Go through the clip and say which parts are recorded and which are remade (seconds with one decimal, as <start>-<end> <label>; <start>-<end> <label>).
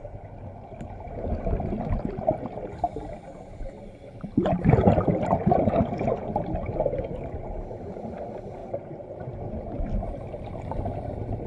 0.0-8.6 recorded; 8.6-9.4 remade; 9.4-11.5 recorded